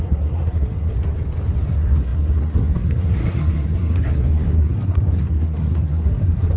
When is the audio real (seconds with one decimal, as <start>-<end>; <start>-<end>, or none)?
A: 0.9-1.7